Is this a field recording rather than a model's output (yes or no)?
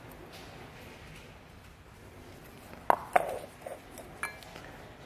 yes